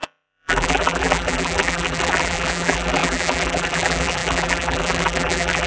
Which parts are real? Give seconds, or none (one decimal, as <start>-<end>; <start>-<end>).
none